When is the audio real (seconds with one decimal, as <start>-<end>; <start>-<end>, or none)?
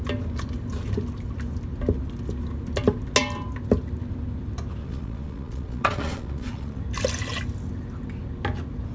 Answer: 0.0-4.8; 6.8-8.9